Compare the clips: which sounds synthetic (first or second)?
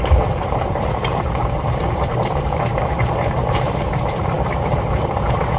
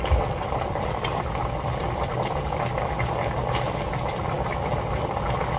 first